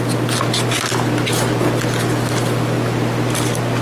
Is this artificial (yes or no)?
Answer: no